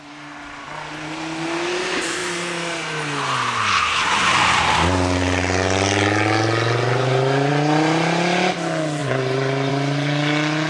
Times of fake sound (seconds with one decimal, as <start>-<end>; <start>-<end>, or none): 9.0-9.7